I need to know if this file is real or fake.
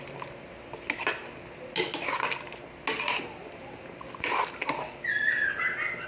real